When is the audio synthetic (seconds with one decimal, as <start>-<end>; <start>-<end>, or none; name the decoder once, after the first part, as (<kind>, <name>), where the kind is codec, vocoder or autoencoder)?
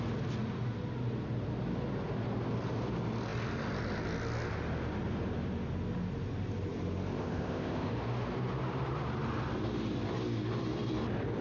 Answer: 7.2-7.9 (codec, ZipCodec)